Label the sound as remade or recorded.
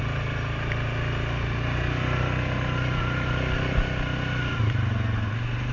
recorded